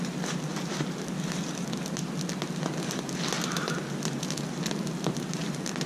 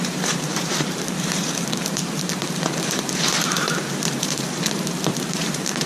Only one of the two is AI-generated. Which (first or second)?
second